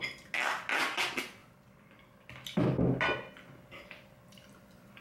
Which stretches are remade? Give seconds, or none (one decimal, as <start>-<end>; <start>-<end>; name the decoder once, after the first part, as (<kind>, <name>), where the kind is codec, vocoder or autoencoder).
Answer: none